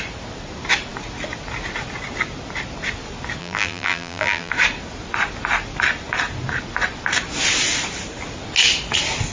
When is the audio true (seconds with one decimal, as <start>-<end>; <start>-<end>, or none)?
0.0-3.4; 4.5-9.3

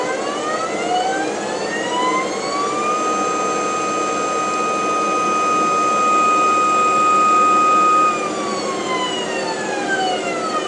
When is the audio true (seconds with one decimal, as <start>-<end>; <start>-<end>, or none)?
0.0-1.1; 1.7-10.7

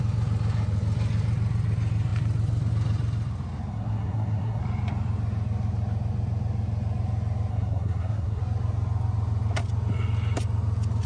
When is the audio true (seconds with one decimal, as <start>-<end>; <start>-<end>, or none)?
0.0-3.7; 4.6-7.5; 8.4-11.1

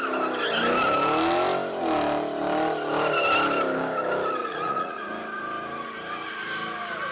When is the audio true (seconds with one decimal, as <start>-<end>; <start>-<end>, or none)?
0.0-4.4; 5.1-7.1

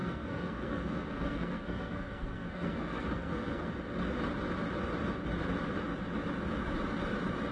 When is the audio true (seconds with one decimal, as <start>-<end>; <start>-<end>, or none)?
3.7-7.5

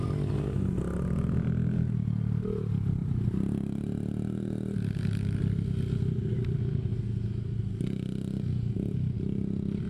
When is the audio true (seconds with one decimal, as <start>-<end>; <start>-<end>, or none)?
0.0-3.0; 3.8-9.9

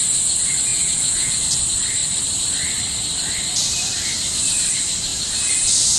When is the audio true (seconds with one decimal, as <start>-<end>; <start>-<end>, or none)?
0.0-0.7; 1.4-6.0

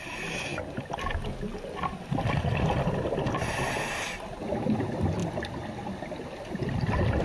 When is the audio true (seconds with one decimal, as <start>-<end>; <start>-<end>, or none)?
0.5-4.8